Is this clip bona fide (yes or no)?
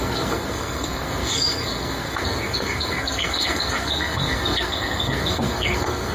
no